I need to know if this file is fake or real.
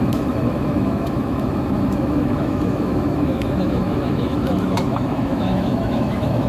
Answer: fake